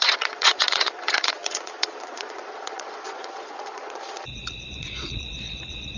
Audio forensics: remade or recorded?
remade